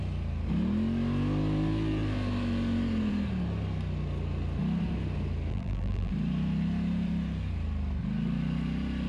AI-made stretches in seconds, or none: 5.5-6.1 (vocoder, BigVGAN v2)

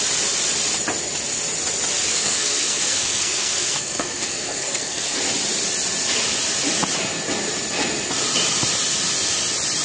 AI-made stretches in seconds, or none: 2.1-5.2 (codec, SNAC)